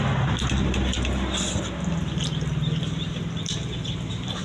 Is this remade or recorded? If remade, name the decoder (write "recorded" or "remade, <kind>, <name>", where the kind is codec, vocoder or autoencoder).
recorded